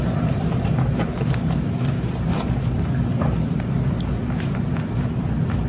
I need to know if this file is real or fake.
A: fake